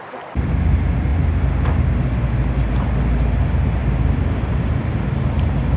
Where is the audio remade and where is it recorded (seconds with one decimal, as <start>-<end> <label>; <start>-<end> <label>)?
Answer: 0.0-5.8 recorded